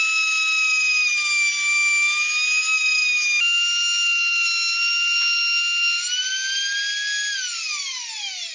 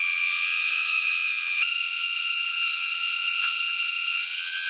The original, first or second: first